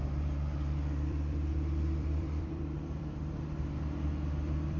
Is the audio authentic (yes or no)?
no